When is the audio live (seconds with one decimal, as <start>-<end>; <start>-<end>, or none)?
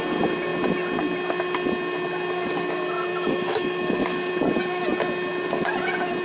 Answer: 0.0-3.1; 4.3-6.2